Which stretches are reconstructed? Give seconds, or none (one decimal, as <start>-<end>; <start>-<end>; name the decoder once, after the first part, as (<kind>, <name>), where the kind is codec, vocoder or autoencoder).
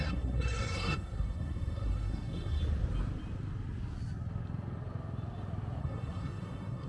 0.0-2.6 (codec, SNAC); 5.8-6.9